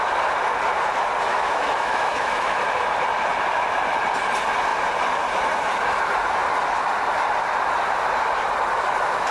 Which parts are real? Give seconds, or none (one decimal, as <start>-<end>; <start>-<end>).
0.0-1.3; 2.6-9.3